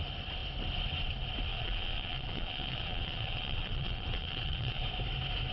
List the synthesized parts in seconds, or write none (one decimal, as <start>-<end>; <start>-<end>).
1.5-4.8